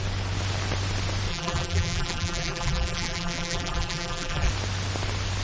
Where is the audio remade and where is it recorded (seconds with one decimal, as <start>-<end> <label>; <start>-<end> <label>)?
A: 0.0-1.3 recorded; 1.3-4.5 remade; 4.5-5.4 recorded